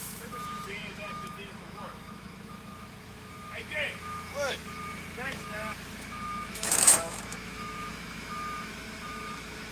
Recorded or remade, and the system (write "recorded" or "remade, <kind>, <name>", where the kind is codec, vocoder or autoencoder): remade, autoencoder, DAC-VAE